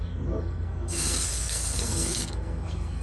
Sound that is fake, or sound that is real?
fake